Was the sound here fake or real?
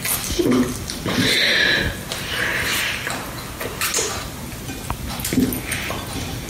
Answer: real